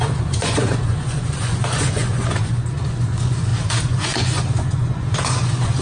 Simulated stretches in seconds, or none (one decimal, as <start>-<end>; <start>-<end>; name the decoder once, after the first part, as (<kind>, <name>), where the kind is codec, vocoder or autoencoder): 0.0-5.8 (vocoder, Vocos)